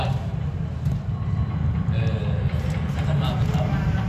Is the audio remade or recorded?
recorded